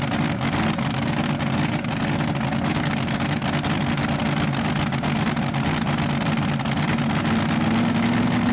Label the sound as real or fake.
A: real